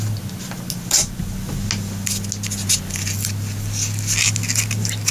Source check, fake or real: real